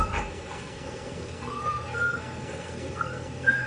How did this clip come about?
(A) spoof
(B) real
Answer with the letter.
A